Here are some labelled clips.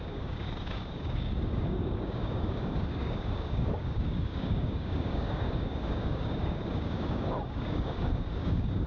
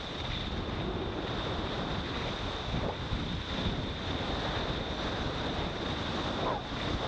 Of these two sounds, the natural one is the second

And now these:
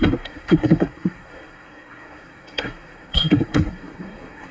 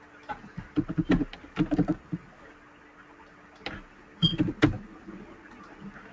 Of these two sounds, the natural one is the second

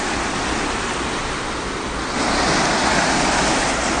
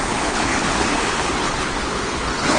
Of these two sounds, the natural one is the first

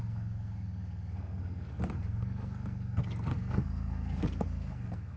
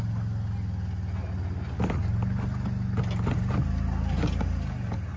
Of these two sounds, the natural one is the second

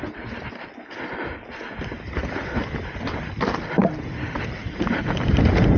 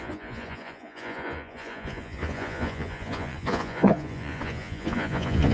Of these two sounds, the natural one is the first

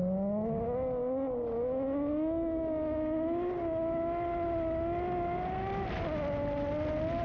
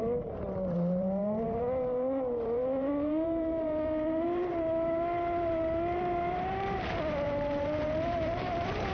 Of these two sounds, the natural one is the first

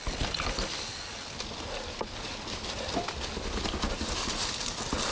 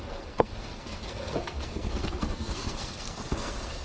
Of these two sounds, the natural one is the first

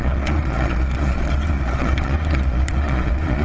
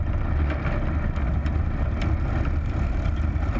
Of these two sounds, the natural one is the second